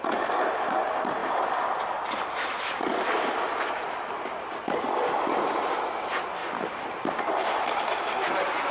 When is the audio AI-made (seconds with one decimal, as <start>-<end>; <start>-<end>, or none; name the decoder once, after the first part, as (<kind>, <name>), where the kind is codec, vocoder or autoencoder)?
6.4-7.9 (vocoder, BigVGAN v2)